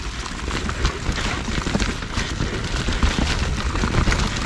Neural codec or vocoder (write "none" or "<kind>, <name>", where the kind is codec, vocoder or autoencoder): none